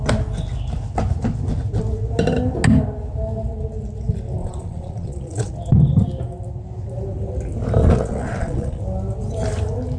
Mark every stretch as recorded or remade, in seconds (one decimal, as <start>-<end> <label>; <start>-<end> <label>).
0.0-4.4 recorded; 4.4-5.5 remade; 5.5-7.8 recorded; 7.8-8.8 remade; 8.8-10.0 recorded